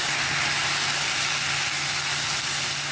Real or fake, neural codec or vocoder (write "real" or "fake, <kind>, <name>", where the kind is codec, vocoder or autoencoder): real